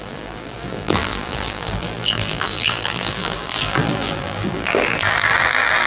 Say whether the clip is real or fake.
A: fake